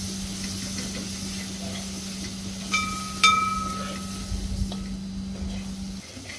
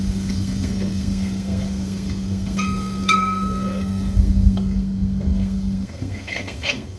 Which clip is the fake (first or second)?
second